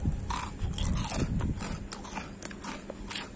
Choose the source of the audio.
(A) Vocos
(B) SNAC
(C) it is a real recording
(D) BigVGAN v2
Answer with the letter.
C